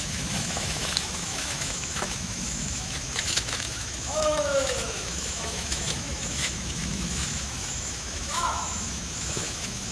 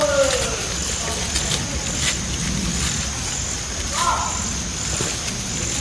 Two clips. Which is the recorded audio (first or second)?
second